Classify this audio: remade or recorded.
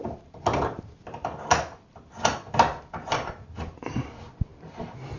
recorded